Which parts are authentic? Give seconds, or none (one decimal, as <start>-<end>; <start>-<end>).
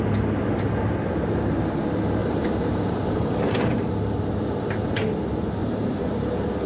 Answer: 0.0-2.2; 3.9-5.6; 6.1-6.7